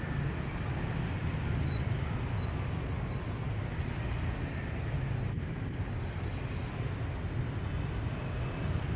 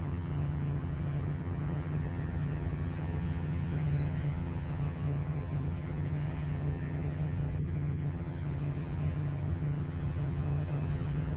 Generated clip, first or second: second